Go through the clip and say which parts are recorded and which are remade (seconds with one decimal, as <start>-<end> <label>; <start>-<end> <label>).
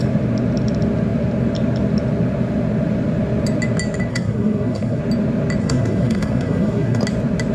0.0-4.1 recorded; 4.1-5.0 remade; 5.0-5.6 recorded; 5.6-7.0 remade; 7.0-7.5 recorded